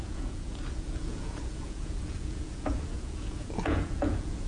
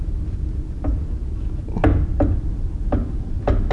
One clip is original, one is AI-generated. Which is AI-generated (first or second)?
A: first